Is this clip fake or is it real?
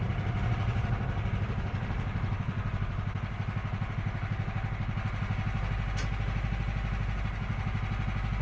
real